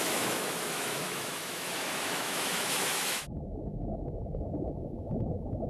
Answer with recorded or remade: remade